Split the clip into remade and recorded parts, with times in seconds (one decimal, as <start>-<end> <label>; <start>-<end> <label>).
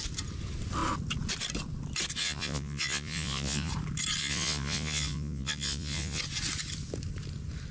0.0-2.2 recorded; 2.2-3.7 remade; 3.7-4.2 recorded; 4.2-6.2 remade; 6.2-7.7 recorded